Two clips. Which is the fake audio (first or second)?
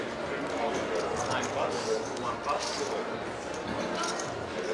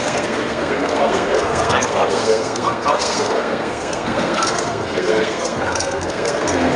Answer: second